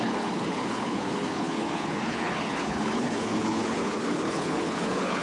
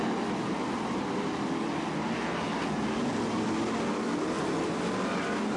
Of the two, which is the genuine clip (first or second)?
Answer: second